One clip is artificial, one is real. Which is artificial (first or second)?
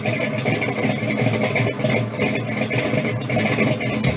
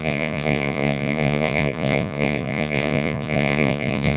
second